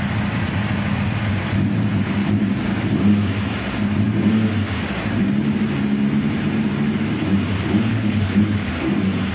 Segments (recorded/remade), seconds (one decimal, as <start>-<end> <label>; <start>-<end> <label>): 0.0-7.9 recorded; 7.9-8.7 remade; 8.7-9.3 recorded